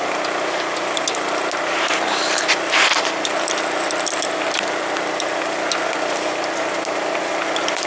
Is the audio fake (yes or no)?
no